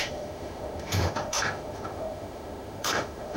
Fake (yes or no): yes